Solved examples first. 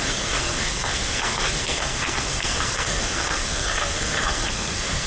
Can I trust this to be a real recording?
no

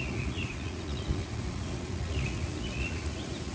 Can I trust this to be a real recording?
no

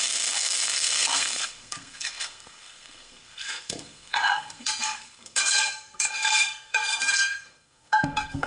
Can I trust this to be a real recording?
no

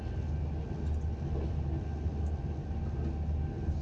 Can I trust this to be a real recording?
yes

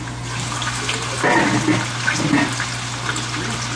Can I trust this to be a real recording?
yes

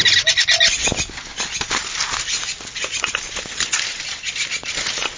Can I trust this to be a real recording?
yes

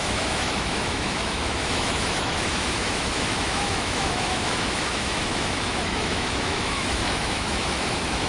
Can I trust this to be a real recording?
no